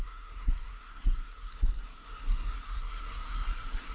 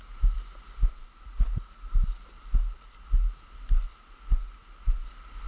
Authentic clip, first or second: second